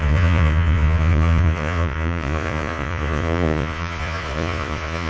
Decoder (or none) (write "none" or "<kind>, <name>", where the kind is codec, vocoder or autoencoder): vocoder, Vocos